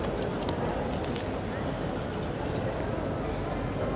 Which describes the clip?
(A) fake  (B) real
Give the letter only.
B